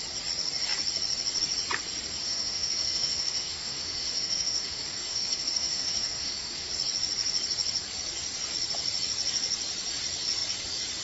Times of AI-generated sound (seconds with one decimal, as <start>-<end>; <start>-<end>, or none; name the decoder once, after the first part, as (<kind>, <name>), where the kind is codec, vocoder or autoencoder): 2.2-6.7 (autoencoder, DAC-VAE)